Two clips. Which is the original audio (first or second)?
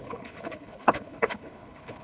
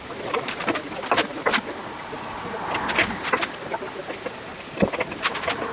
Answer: second